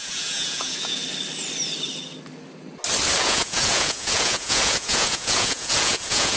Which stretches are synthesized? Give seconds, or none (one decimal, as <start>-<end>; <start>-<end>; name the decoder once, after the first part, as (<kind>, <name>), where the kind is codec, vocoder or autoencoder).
0.0-1.0 (vocoder, Vocos); 3.2-6.4